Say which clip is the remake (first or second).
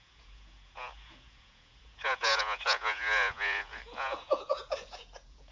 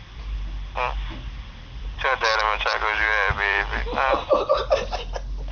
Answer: first